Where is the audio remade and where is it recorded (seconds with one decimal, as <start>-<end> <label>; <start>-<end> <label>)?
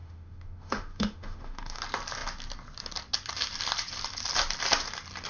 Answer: 0.0-1.8 remade; 1.8-5.3 recorded